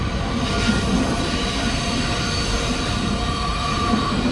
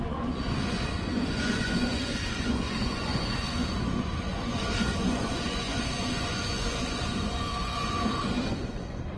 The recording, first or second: first